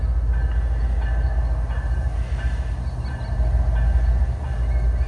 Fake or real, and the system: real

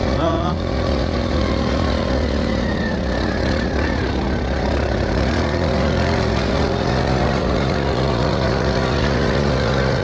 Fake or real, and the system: fake, vocoder, Vocos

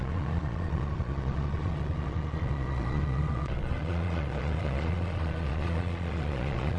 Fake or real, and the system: fake, vocoder, Vocos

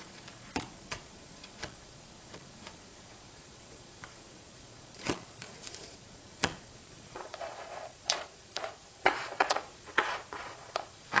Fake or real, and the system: fake, vocoder, Vocos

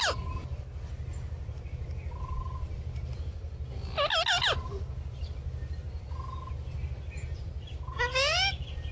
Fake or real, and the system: real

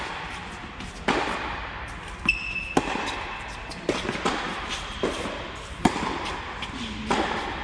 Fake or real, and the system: real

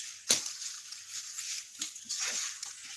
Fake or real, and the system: fake, vocoder, Vocos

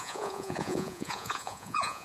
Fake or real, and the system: fake, vocoder, Vocos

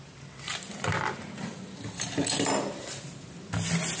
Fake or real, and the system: real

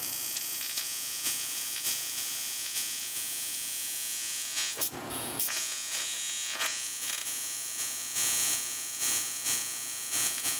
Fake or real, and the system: fake, vocoder, Vocos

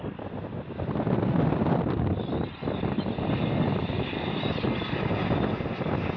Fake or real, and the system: real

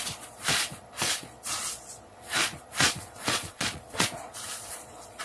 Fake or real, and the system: fake, vocoder, Vocos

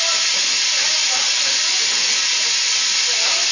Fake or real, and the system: real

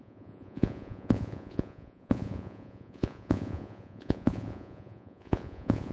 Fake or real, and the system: fake, vocoder, Vocos